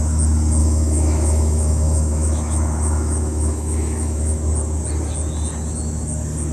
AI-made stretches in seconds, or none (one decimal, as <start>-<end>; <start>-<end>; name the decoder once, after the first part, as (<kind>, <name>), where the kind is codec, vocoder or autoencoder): 0.6-4.4 (autoencoder, DAC-VAE)

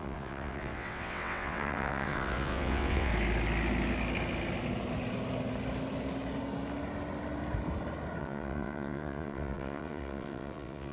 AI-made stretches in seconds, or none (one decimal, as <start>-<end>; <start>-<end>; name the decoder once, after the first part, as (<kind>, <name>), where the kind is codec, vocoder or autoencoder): 0.0-3.1 (vocoder, WaveNeXt); 8.2-10.9

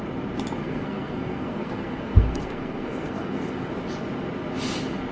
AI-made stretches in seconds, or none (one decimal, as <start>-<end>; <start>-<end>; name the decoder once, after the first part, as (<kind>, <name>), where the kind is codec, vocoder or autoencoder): 0.6-3.7 (codec, SNAC)

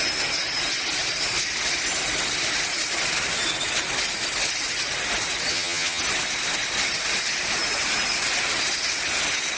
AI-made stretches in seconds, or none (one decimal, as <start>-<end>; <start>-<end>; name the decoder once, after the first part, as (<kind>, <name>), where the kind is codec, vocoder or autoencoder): 5.5-6.0 (vocoder, HiFi-GAN)